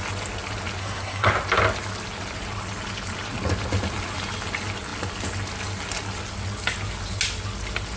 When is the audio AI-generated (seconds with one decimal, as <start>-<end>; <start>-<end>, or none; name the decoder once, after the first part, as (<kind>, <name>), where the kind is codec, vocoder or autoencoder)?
0.8-1.3 (codec, SNAC)